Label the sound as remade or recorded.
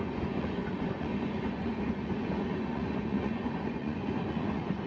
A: remade